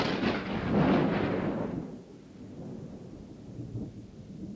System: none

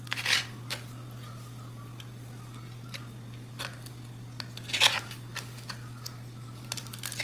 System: none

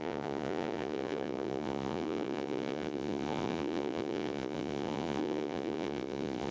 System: vocoder, Vocos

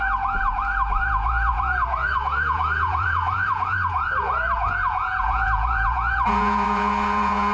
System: vocoder, Vocos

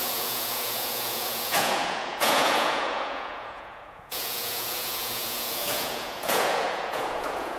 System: vocoder, Vocos